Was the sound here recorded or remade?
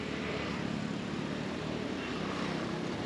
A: recorded